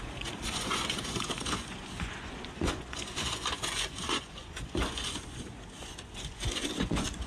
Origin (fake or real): fake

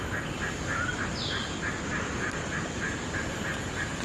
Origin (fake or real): real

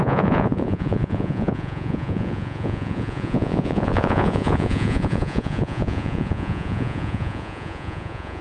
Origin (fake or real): fake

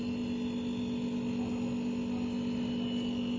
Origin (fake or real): real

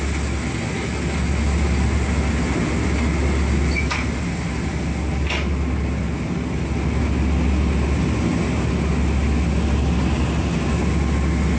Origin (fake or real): real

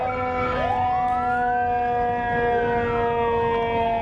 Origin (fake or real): real